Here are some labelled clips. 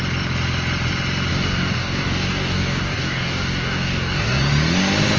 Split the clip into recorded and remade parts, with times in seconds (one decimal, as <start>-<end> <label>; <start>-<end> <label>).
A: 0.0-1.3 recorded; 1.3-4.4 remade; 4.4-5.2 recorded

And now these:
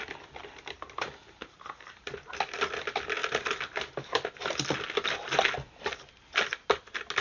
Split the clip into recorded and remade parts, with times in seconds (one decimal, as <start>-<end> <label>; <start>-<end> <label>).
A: 0.0-0.4 recorded; 0.4-2.1 remade; 2.1-7.2 recorded

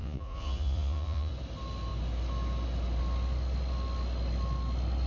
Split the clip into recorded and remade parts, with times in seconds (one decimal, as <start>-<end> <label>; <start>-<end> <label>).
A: 0.0-1.3 remade; 1.3-5.1 recorded

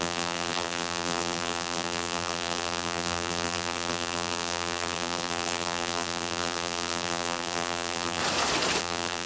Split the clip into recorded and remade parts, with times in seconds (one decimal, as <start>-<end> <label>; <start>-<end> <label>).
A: 0.0-8.2 remade; 8.2-8.8 recorded; 8.8-9.3 remade

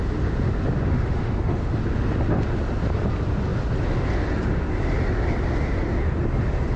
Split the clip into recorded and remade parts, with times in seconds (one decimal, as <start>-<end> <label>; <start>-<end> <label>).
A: 0.0-0.9 recorded; 0.9-1.8 remade; 1.8-6.8 recorded

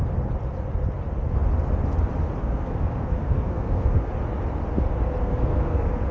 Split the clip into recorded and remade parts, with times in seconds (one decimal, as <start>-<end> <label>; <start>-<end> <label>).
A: 0.0-2.4 recorded; 2.4-4.1 remade; 4.1-5.2 recorded; 5.2-6.1 remade